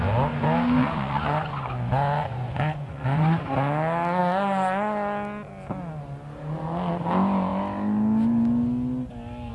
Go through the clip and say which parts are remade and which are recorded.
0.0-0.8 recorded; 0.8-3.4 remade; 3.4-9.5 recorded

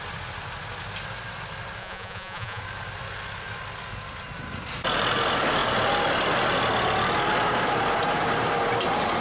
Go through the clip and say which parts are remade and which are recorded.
0.0-1.8 recorded; 1.8-2.6 remade; 2.6-9.2 recorded